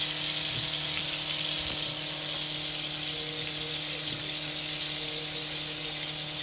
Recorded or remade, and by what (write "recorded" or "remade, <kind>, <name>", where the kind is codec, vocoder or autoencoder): recorded